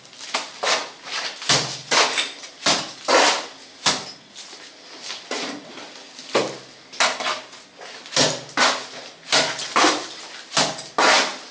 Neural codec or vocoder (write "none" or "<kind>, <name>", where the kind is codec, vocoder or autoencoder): none